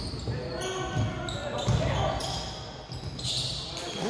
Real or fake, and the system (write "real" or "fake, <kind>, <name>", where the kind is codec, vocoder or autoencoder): real